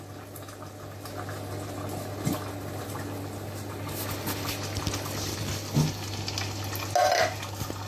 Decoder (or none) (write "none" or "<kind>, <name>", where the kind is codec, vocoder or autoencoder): none